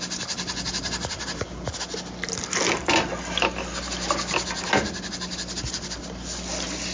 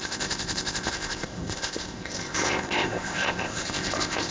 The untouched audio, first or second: first